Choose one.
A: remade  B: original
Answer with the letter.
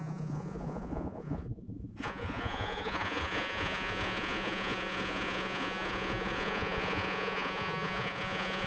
A